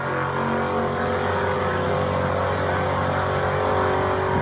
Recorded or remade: recorded